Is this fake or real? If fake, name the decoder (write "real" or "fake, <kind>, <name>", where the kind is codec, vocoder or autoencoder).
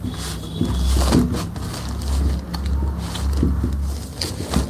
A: real